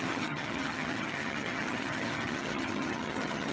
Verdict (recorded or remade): remade